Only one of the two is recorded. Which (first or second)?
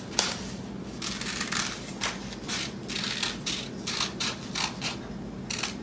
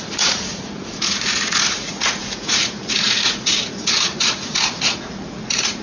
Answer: first